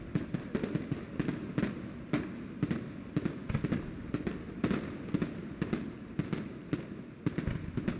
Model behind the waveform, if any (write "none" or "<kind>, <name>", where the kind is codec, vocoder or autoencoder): none